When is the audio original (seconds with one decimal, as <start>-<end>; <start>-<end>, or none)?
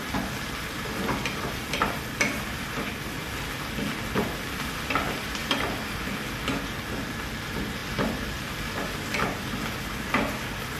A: 0.0-10.8